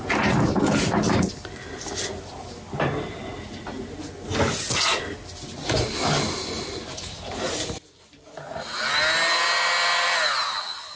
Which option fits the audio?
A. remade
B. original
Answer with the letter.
B